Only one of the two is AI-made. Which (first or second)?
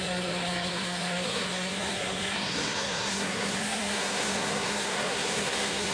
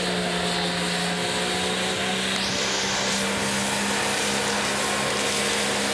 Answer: first